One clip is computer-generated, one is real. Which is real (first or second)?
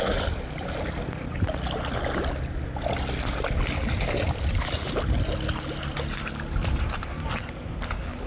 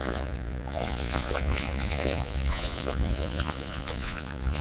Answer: first